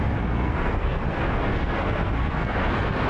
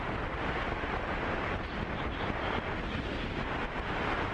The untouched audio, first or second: second